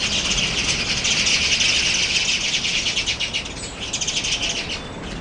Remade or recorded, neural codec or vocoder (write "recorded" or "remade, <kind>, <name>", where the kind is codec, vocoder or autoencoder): recorded